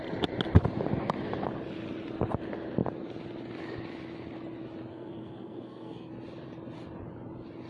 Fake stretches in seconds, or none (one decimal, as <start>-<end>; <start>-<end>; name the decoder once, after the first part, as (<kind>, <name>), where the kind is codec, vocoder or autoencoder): 4.9-6.1 (codec, SNAC)

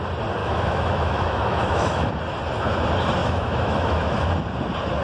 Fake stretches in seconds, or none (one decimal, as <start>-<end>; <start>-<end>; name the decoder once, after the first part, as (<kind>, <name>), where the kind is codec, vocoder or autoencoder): 0.4-2.1 (autoencoder, DAC-VAE); 3.2-4.3

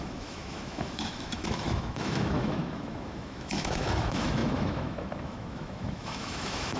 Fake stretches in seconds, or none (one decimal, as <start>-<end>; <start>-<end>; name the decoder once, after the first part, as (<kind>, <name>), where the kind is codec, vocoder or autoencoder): 0.0-6.8 (autoencoder, DAC-VAE)

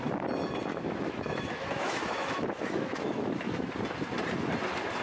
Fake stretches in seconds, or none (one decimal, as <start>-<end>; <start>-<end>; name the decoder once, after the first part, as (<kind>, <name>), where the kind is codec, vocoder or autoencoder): 0.7-3.7 (autoencoder, DAC-VAE)

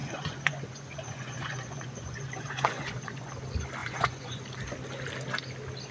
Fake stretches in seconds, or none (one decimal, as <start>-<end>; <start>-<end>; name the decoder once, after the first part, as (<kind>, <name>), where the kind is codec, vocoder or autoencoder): 0.0-3.3 (vocoder, Vocos); 3.8-4.4

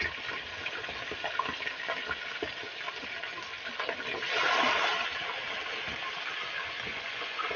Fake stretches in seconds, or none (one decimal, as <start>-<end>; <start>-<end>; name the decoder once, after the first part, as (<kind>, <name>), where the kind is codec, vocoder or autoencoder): 6.9-7.6 (vocoder, Vocos)

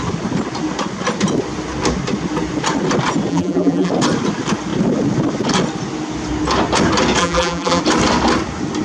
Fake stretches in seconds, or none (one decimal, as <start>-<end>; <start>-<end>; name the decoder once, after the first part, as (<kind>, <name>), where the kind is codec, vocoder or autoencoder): 3.3-3.9 (vocoder, BigVGAN v2); 7.2-7.8

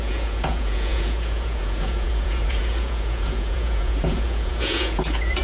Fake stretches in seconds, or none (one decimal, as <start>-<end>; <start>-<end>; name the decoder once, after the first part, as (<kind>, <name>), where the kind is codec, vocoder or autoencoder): 0.0-5.4 (vocoder, Vocos)